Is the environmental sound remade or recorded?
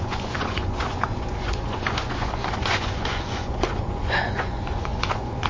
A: remade